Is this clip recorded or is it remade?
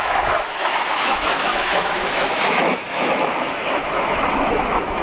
remade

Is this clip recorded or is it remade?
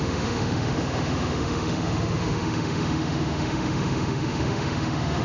remade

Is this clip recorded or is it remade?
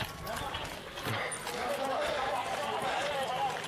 recorded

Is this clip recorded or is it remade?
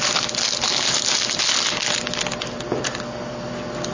recorded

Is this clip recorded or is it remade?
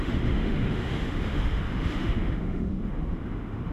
remade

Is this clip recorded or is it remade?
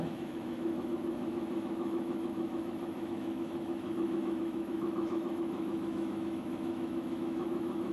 remade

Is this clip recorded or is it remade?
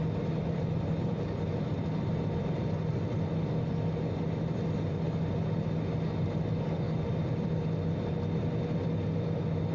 recorded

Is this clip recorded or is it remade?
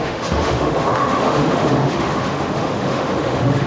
remade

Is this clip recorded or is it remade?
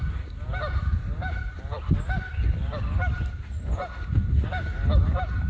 recorded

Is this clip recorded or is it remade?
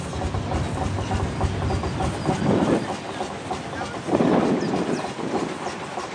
recorded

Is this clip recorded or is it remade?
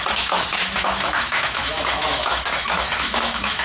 remade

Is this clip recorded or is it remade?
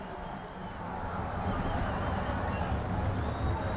recorded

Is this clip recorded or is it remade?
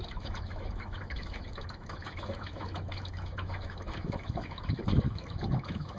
remade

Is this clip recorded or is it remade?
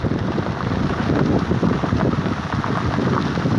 recorded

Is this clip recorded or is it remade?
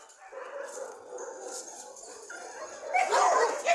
recorded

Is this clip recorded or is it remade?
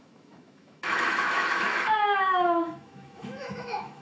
remade